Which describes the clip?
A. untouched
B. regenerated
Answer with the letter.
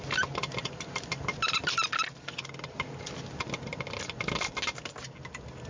A